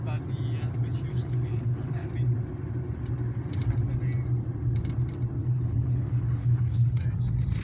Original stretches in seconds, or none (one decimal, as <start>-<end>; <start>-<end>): 0.0-1.1; 2.1-5.4; 7.0-7.6